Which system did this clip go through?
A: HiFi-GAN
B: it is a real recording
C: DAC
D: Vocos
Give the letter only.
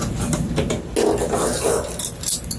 B